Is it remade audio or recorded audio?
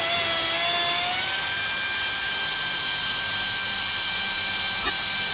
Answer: recorded